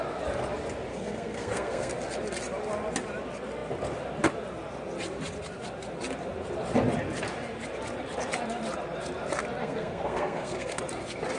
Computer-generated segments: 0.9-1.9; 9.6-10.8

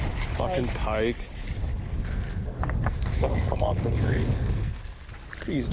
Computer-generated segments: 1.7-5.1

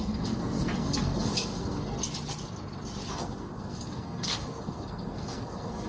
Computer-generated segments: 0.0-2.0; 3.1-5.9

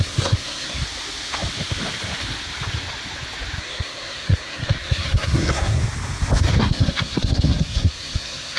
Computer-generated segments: 0.0-0.8; 3.6-5.8; 6.6-8.6